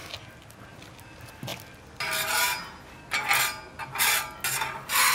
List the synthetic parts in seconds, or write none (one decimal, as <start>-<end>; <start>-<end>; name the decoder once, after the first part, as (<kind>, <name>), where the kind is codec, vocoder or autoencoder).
none